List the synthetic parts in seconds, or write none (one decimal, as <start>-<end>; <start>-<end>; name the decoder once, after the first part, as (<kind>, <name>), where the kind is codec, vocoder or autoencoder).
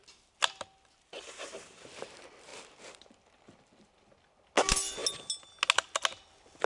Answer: none